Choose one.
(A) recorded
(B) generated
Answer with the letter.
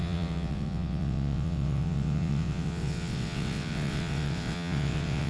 B